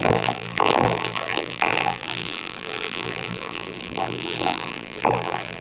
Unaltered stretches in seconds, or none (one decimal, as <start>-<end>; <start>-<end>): none